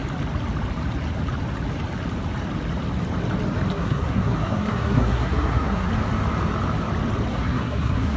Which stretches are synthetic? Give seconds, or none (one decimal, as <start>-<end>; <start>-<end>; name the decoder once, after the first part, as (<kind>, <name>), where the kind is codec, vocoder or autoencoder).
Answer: 3.7-5.9 (codec, SNAC); 7.3-8.2